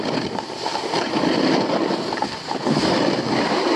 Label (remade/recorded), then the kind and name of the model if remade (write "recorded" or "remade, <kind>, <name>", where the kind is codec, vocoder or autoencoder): remade, vocoder, BigVGAN v2